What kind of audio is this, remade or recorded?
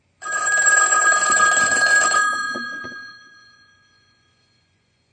remade